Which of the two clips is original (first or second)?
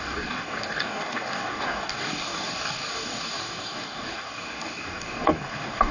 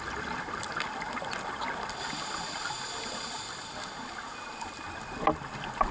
second